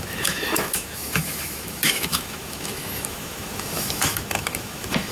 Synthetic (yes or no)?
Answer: yes